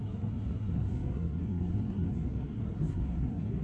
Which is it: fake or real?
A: fake